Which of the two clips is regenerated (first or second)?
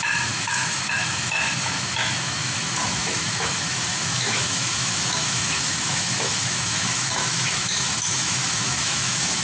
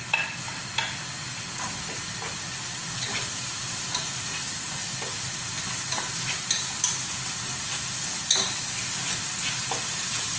first